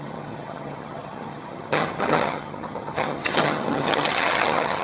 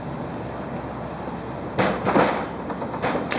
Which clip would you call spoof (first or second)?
first